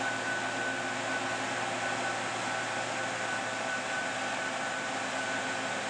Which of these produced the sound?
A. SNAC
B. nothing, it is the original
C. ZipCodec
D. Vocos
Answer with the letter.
B